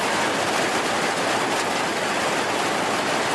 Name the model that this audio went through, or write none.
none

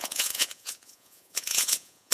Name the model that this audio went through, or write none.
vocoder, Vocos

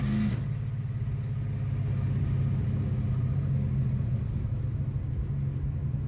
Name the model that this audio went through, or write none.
none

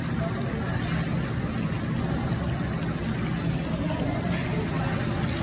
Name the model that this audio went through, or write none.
none